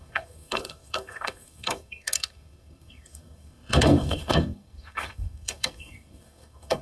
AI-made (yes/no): yes